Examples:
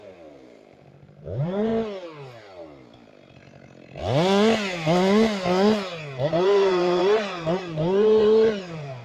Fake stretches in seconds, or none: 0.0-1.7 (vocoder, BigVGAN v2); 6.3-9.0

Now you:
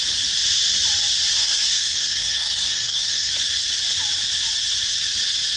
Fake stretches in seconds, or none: 1.4-3.3 (codec, SNAC)

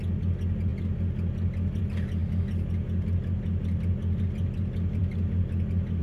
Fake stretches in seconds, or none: none

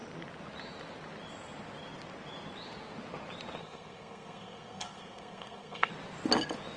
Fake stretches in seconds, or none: 3.6-5.9 (codec, SNAC)